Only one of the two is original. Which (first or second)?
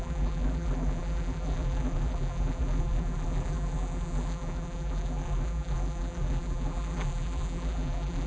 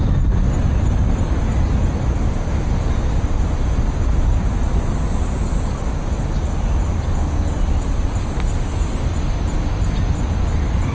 second